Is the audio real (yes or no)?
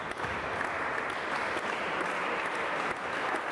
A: yes